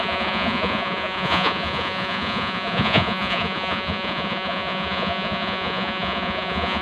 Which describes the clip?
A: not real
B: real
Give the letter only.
A